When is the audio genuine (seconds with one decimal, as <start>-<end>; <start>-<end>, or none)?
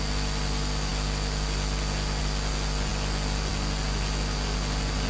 0.0-5.1